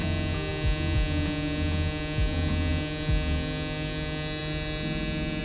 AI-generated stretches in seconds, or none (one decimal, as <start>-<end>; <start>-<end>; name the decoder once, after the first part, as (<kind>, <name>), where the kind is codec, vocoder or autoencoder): none